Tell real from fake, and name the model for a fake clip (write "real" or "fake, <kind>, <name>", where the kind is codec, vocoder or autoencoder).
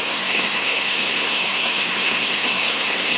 fake, codec, SNAC